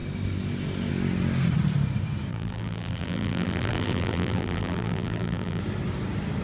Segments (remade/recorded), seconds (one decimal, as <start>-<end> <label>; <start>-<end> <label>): 0.0-2.3 recorded; 2.3-5.6 remade; 5.6-6.4 recorded